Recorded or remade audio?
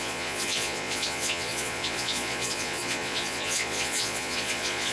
remade